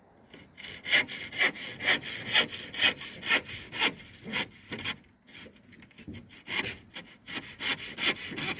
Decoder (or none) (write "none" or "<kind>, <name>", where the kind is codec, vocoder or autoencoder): none